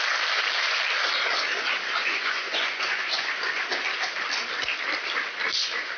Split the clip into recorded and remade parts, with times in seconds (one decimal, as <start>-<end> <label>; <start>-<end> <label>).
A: 0.0-2.0 recorded; 2.0-3.6 remade; 3.6-6.0 recorded